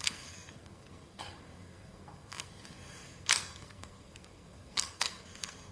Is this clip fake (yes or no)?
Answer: yes